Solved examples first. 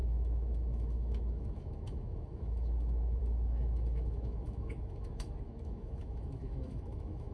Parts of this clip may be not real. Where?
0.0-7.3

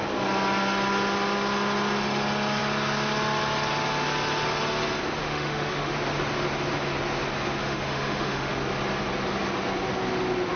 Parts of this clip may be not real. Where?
5.2-5.9; 7.6-8.5

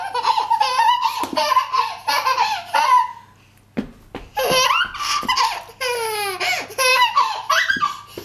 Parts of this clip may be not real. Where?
6.9-7.5

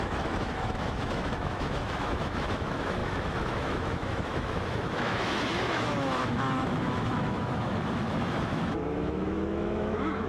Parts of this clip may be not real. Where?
0.0-10.3

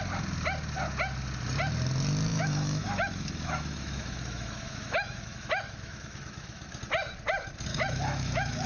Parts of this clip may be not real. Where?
2.3-6.8; 7.7-8.7

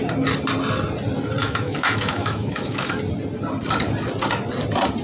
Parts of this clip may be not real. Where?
1.4-3.0

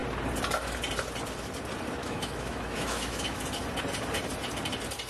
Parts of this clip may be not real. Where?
2.0-3.4